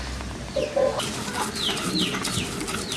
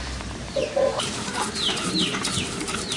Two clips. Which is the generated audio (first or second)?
second